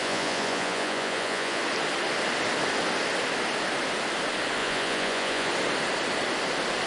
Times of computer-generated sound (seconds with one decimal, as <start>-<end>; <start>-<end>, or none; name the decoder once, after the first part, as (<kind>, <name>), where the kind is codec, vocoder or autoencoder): 0.0-1.6 (vocoder, Vocos); 4.6-5.5